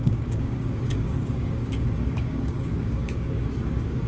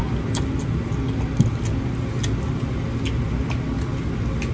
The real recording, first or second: second